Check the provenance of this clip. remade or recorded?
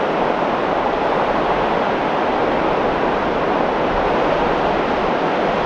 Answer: recorded